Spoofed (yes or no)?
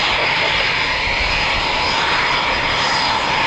no